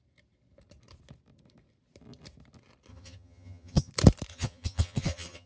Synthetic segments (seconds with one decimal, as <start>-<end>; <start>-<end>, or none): 2.9-3.9; 4.3-5.5

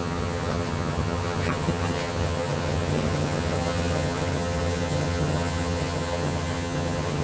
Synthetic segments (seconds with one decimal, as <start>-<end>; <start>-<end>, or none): 0.0-7.2

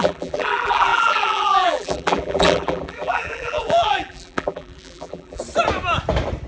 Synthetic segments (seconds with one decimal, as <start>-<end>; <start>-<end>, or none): 0.0-5.4

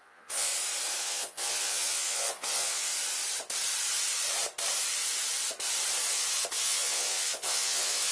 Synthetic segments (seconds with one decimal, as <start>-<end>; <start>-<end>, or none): 0.0-0.5; 1.0-2.9; 6.5-8.1

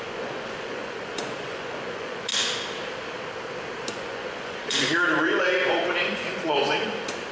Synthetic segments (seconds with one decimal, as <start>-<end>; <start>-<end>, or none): 0.0-2.3; 3.9-7.3

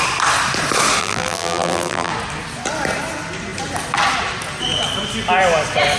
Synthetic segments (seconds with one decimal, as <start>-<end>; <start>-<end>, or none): 1.0-2.1

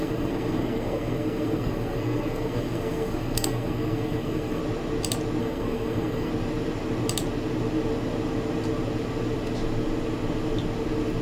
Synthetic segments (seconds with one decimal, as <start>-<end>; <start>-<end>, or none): 0.0-4.6; 5.4-6.3

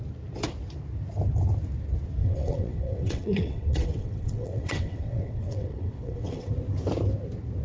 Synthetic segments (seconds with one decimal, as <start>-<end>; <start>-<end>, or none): 2.2-6.5